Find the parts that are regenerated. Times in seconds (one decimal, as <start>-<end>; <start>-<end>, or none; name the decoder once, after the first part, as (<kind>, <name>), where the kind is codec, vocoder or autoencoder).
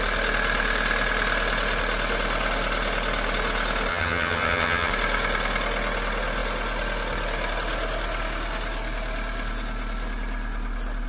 3.9-4.9 (vocoder, HiFi-GAN)